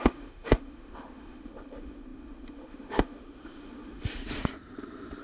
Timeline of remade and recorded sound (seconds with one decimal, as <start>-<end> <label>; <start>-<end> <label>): 0.0-4.2 remade; 4.2-5.2 recorded